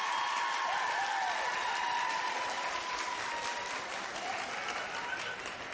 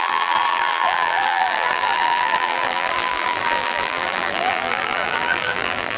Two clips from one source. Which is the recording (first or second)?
first